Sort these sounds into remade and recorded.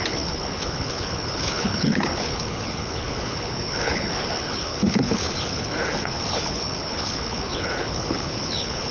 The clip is remade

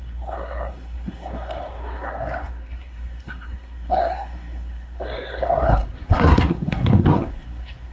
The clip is remade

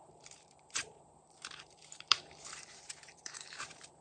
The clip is remade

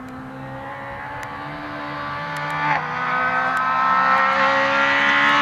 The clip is recorded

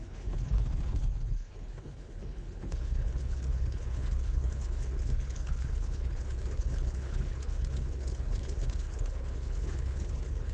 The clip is remade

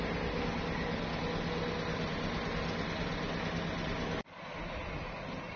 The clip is recorded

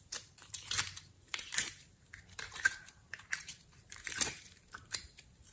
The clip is remade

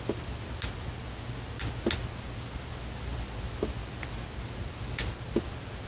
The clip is recorded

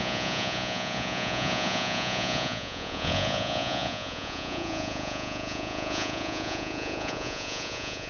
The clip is remade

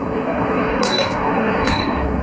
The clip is remade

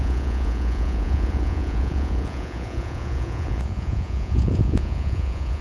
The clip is remade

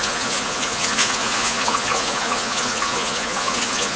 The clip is remade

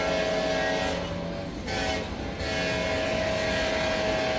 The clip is recorded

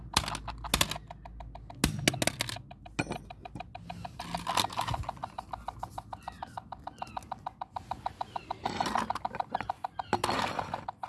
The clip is recorded